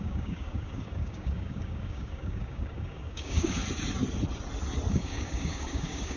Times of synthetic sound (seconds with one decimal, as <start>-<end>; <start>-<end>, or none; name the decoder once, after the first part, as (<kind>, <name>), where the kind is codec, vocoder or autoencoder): 0.0-3.6 (codec, DAC); 4.9-6.2